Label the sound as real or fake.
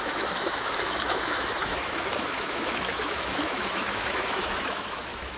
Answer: fake